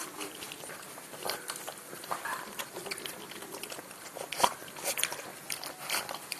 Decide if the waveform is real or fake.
real